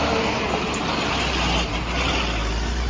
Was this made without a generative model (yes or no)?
yes